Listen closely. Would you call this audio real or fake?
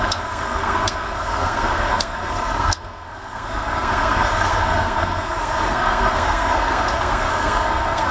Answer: fake